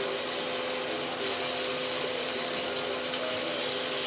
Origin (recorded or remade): recorded